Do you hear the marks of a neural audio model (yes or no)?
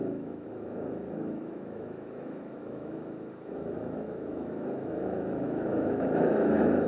yes